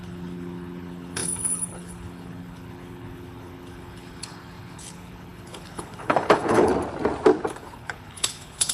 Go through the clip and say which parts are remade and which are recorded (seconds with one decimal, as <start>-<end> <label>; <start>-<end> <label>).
0.0-6.7 remade; 6.7-7.5 recorded; 7.5-8.7 remade